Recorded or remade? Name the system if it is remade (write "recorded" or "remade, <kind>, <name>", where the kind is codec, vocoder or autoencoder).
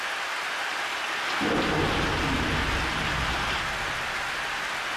recorded